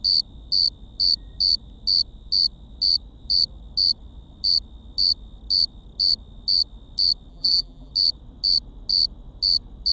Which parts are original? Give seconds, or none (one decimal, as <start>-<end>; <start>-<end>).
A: 0.0-7.3; 7.9-9.9